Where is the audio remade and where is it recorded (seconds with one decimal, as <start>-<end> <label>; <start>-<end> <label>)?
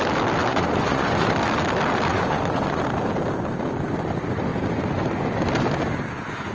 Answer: 0.0-0.5 recorded; 0.5-1.3 remade; 1.3-2.1 recorded; 2.1-2.8 remade; 2.8-6.5 recorded